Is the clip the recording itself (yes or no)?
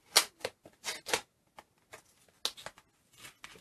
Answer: yes